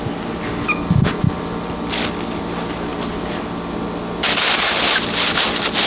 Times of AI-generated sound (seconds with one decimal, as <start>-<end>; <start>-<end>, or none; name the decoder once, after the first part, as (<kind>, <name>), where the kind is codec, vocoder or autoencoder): none